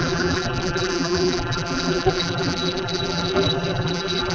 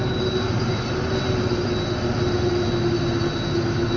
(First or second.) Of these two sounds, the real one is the second